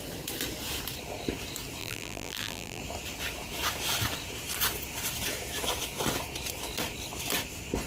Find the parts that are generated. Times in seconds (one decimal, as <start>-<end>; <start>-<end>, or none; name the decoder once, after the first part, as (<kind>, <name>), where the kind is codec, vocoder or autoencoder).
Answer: 1.8-2.8 (vocoder, BigVGAN v2)

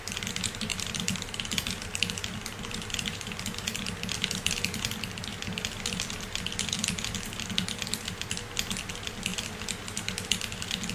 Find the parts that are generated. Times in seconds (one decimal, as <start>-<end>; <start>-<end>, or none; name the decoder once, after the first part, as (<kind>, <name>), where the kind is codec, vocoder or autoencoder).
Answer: 0.7-4.5 (vocoder, BigVGAN v2)